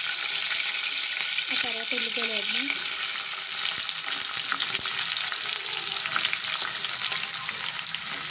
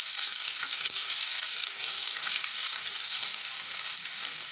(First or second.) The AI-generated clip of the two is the second